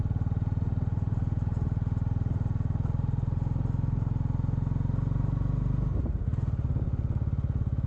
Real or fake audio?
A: real